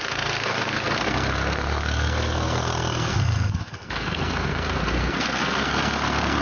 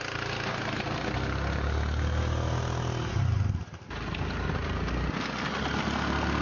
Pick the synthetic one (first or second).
first